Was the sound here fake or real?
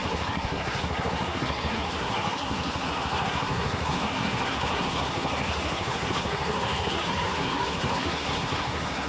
fake